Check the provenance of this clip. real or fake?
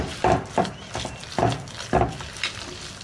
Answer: real